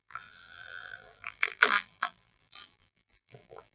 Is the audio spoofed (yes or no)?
yes